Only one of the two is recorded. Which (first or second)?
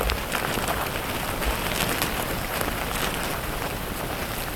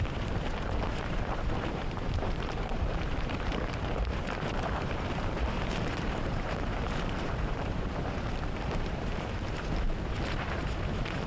first